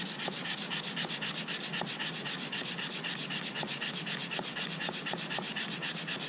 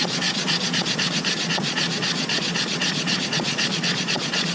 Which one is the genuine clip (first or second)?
first